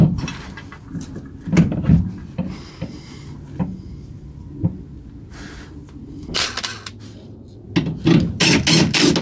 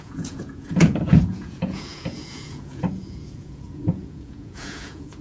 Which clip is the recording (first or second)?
first